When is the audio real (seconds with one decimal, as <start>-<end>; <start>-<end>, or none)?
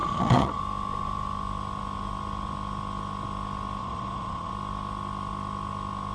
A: 0.6-3.8; 4.5-6.1